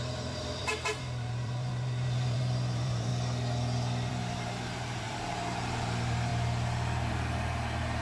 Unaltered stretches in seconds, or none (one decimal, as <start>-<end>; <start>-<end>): 3.1-4.1; 6.3-7.1

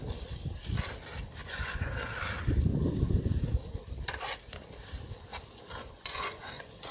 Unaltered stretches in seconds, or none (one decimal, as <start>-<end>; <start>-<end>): 0.0-1.4; 1.9-5.8

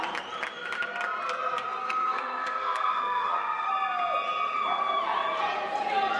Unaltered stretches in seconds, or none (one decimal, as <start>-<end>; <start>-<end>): 0.0-1.8; 3.7-6.2

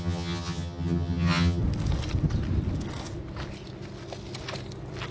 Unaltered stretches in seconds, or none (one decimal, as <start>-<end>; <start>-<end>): 1.6-5.1

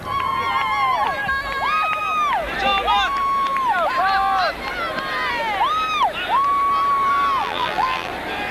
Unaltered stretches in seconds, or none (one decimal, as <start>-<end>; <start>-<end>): 0.0-7.4; 8.1-8.5

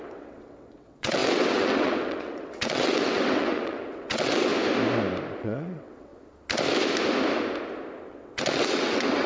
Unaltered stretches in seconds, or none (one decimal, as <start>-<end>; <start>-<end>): 4.5-5.4; 6.1-8.1

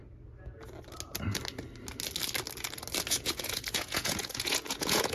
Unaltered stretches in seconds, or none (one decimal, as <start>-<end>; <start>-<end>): 0.0-3.1